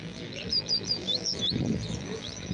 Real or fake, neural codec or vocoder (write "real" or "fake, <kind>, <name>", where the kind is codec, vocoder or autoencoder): fake, vocoder, BigVGAN v2